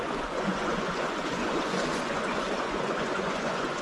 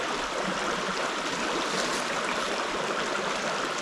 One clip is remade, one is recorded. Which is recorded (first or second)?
second